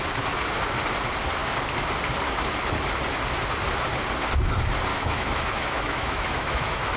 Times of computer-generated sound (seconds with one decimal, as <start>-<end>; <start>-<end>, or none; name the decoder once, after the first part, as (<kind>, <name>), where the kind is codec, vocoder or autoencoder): 4.9-7.0 (autoencoder, DAC-VAE)